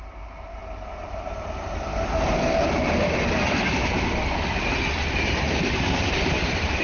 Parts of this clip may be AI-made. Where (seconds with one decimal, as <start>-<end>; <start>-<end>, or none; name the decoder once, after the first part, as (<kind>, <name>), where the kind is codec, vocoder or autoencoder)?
0.0-6.8 (vocoder, BigVGAN v2)